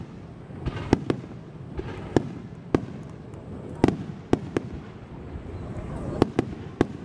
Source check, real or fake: real